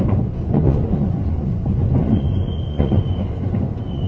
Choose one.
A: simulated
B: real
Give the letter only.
A